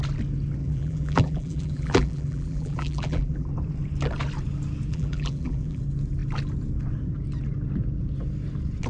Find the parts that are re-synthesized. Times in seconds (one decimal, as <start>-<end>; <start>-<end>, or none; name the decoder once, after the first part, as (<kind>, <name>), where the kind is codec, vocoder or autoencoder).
0.6-3.5 (vocoder, BigVGAN v2); 4.9-5.8